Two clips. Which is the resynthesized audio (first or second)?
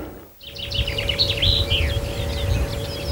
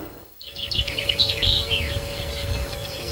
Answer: second